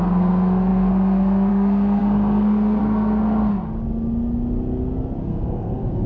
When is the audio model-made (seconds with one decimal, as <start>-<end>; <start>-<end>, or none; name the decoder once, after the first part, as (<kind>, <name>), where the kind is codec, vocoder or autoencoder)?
0.0-3.5 (codec, SNAC); 5.2-6.1